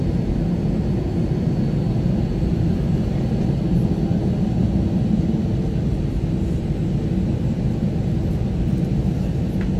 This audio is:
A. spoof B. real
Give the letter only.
B